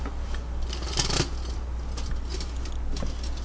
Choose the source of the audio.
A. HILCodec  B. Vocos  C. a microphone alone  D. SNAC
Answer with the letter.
C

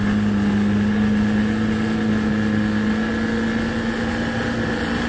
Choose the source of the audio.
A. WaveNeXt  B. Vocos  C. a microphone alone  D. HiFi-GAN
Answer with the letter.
C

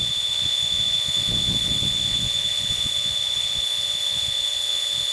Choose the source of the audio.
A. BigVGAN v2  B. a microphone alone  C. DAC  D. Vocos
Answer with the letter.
D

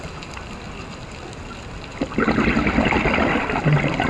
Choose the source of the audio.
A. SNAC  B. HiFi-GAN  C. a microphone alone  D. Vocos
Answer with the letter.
C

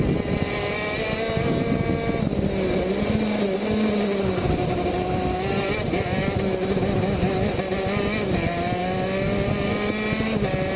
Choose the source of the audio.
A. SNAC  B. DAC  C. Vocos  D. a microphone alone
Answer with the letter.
D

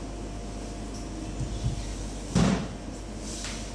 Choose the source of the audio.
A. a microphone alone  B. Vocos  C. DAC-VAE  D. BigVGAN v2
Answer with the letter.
A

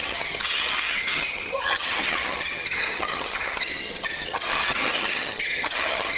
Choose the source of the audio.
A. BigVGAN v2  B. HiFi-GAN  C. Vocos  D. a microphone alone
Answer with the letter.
B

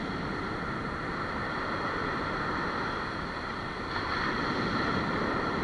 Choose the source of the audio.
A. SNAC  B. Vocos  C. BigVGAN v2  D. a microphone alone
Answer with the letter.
C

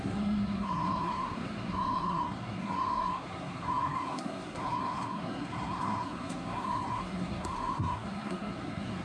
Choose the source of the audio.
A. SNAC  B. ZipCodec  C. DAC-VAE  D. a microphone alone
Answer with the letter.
A